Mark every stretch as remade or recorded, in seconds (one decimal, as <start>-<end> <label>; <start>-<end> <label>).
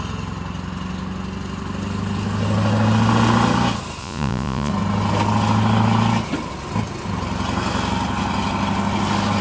0.0-4.0 recorded; 4.0-4.7 remade; 4.7-9.4 recorded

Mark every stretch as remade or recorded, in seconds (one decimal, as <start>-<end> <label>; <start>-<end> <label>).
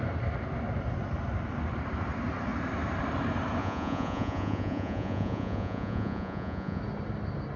0.0-3.6 recorded; 3.6-6.8 remade; 6.8-7.6 recorded